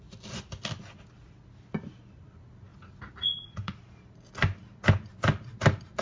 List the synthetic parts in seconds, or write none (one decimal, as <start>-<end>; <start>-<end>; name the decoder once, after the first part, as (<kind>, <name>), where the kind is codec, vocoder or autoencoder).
2.7-3.8 (vocoder, Vocos)

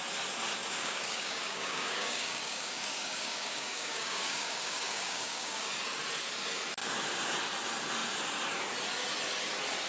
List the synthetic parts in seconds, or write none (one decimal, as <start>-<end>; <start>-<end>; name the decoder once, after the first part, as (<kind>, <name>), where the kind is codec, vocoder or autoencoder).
0.6-5.7 (codec, DAC)